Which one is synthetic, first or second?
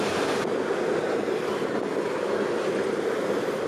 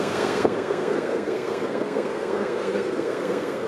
second